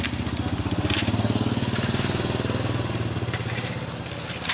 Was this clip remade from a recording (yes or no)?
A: no